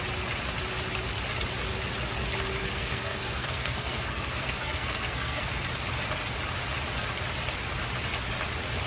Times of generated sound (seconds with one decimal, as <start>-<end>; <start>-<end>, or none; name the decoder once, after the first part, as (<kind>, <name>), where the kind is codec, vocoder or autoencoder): 2.6-5.5 (codec, SNAC)